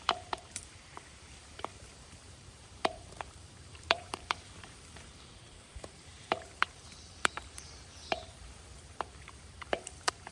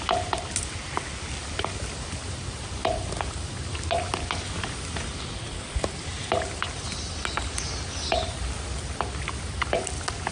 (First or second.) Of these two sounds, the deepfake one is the first